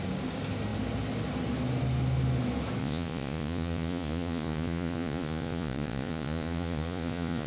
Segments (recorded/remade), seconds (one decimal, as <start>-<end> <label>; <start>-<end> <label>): 0.0-2.8 recorded; 2.8-7.5 remade